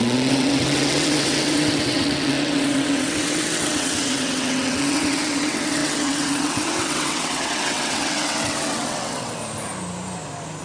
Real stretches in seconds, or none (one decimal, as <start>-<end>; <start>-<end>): 9.4-10.6